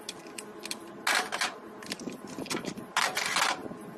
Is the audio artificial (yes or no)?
no